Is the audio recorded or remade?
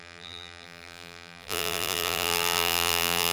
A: remade